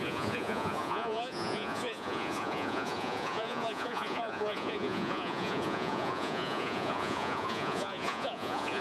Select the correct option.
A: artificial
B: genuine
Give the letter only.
A